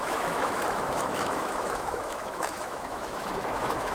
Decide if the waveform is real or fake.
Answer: fake